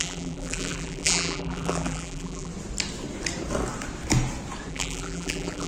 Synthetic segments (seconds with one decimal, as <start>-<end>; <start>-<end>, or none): 0.0-2.5; 4.7-5.7